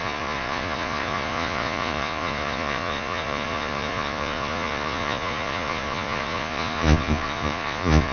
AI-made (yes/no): yes